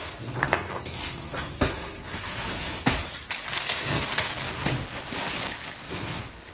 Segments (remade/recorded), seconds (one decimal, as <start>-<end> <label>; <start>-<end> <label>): 0.0-2.9 remade; 2.9-3.5 recorded; 3.5-4.3 remade; 4.3-5.9 recorded; 5.9-6.5 remade